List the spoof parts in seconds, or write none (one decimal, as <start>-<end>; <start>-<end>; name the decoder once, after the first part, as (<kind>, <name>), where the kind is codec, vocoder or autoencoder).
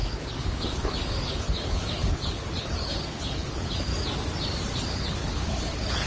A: 0.0-3.9 (codec, HILCodec); 4.9-6.1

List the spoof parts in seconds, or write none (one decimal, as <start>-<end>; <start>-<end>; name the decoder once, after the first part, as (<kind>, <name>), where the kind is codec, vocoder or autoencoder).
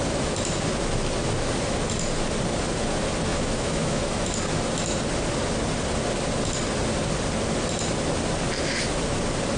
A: 3.3-4.0 (autoencoder, DAC-VAE)